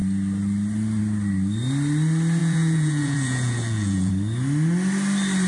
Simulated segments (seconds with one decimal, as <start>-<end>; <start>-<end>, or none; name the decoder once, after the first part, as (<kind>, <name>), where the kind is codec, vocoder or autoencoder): 2.4-4.1 (vocoder, Vocos)